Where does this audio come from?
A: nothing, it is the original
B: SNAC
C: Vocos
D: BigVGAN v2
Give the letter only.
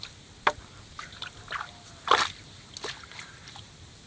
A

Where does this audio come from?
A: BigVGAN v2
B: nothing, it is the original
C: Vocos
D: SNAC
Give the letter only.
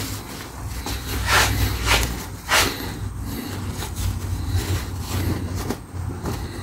B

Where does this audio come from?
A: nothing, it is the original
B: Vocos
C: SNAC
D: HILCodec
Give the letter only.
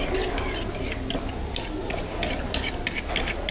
A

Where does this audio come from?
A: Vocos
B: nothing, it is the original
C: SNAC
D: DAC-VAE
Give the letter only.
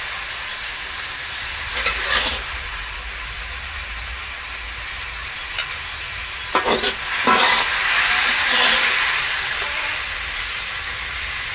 B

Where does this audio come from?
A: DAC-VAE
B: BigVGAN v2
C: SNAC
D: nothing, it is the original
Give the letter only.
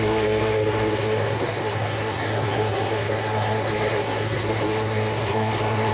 C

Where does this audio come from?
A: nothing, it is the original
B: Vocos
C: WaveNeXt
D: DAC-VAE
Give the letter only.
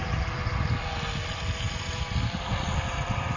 A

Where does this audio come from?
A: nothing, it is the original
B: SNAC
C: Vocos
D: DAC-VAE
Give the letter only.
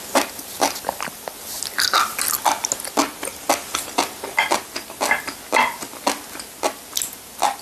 A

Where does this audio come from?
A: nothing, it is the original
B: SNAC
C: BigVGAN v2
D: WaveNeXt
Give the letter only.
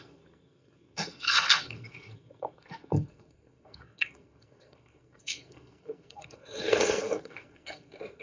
B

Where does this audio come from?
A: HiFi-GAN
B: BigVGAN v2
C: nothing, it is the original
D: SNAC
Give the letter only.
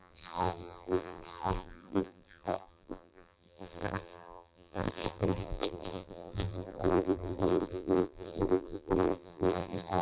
B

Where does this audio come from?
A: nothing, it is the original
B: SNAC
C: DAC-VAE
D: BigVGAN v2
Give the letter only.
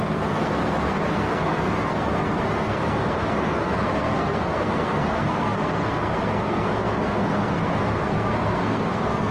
B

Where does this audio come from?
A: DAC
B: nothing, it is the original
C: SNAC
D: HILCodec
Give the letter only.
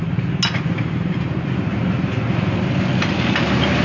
B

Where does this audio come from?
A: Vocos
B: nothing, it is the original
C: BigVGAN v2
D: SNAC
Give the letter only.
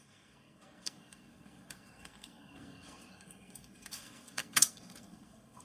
D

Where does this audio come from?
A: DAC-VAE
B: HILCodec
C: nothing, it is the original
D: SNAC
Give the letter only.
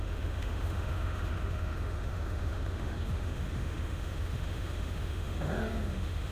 A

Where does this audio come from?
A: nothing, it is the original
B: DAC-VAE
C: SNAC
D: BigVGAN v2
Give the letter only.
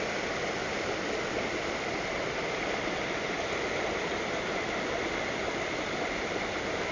A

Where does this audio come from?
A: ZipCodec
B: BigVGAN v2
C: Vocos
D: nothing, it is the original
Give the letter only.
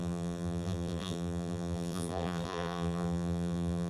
B